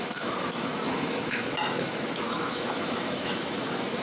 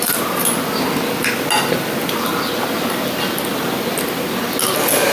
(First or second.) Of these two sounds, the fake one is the first